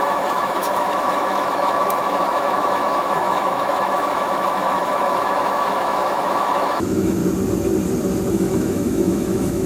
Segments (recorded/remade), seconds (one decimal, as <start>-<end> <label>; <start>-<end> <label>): 0.0-7.2 remade; 7.2-8.3 recorded; 8.3-9.7 remade